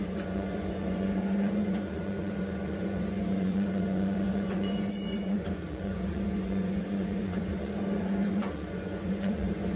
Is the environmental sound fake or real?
fake